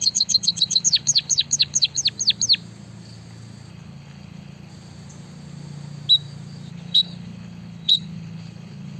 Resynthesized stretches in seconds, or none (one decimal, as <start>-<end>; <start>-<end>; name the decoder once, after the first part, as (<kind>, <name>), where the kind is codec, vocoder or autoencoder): 0.0-2.0 (codec, HILCodec); 3.7-4.7; 6.7-9.0